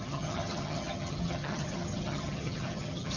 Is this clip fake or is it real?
fake